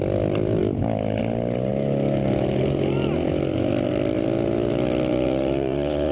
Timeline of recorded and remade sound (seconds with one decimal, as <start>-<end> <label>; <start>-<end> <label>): 0.0-5.1 recorded; 5.1-6.1 remade